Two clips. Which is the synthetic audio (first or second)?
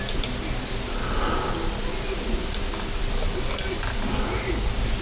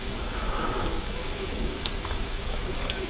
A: second